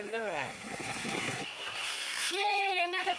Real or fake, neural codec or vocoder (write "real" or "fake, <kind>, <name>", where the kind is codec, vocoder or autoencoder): fake, codec, SNAC